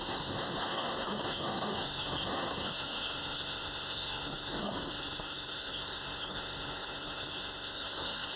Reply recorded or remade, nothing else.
remade